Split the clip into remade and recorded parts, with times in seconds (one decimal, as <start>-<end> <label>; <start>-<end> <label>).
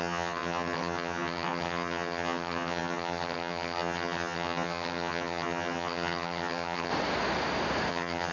0.0-6.9 remade; 6.9-7.9 recorded; 7.9-8.3 remade